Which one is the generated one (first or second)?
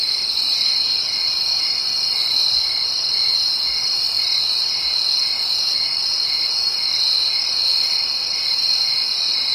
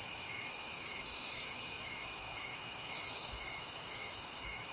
second